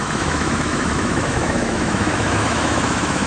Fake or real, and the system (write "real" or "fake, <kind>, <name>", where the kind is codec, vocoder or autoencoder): fake, autoencoder, DAC-VAE